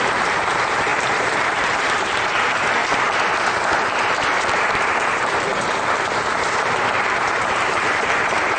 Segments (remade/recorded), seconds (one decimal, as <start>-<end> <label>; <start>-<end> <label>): 0.0-2.8 remade; 2.8-4.0 recorded; 4.0-5.5 remade; 5.5-6.9 recorded; 6.9-8.6 remade